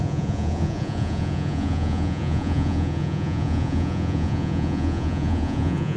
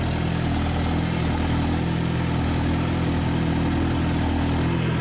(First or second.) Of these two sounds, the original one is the second